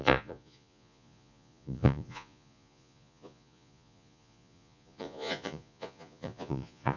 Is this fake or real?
fake